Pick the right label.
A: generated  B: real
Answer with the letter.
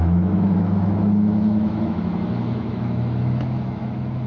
A